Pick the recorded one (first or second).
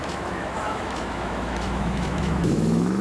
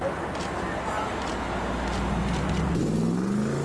second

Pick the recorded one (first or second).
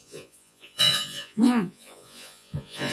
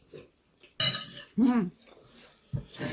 second